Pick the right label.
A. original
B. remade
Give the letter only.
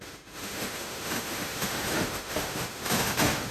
B